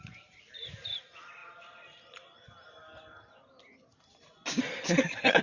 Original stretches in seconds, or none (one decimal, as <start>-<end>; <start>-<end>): 0.0-5.4